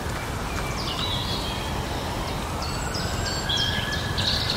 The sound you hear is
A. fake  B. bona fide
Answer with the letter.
B